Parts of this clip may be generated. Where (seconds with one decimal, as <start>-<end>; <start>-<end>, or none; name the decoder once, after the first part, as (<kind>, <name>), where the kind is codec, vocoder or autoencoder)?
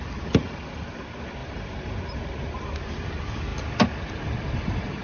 0.4-1.0 (vocoder, BigVGAN v2); 1.4-2.0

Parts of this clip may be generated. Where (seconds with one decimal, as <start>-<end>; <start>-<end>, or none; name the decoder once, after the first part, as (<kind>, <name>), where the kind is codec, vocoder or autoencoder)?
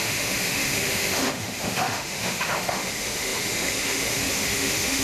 0.0-5.0 (autoencoder, DAC-VAE)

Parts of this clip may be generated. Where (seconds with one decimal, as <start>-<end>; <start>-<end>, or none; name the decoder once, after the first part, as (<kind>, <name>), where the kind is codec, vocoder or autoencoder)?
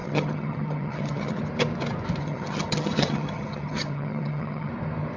0.0-1.4 (vocoder, HiFi-GAN); 2.2-4.7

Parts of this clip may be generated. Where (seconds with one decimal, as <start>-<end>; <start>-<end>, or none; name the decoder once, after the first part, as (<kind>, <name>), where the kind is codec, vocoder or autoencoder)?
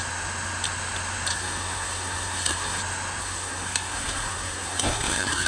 1.3-2.8 (codec, SNAC); 3.2-5.5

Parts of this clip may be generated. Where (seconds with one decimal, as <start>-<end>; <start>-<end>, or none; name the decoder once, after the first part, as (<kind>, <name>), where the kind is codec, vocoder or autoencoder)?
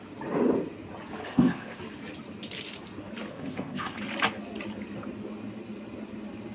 1.3-1.8 (codec, ZipCodec); 3.3-4.0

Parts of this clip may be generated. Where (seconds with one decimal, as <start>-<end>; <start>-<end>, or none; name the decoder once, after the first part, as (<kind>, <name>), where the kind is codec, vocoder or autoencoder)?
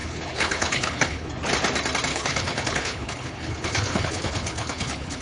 0.0-1.3 (codec, HILCodec); 2.1-5.2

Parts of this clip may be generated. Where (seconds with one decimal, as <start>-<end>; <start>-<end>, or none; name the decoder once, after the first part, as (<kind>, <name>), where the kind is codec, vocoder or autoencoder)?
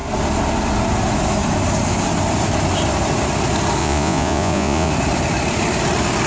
3.8-4.9 (vocoder, Vocos)